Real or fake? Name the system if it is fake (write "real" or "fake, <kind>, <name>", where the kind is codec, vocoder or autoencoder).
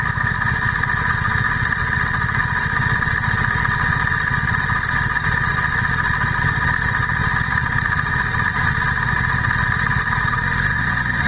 real